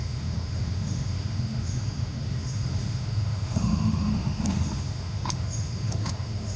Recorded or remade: remade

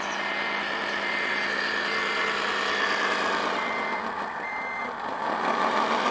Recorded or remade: recorded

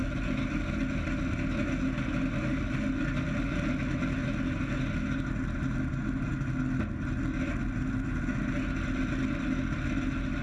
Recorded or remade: recorded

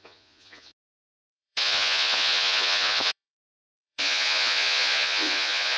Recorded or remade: remade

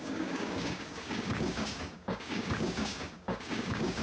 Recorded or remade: remade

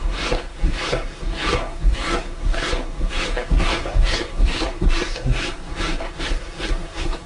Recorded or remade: remade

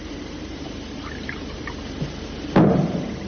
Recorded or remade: recorded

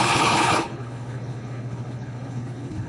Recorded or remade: remade